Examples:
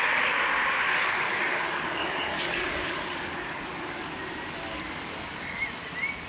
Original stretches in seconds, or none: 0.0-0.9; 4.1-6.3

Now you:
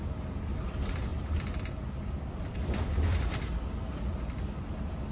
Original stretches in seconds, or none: 0.0-1.1; 4.1-5.1

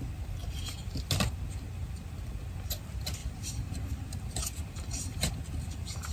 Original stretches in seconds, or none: 0.0-3.2; 5.3-6.1

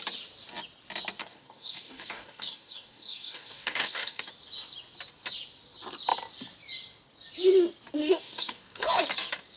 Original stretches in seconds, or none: 0.0-1.2; 4.3-8.0; 9.0-9.6